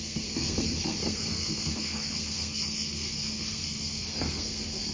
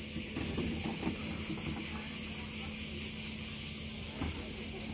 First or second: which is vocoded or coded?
first